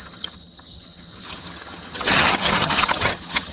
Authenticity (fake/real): fake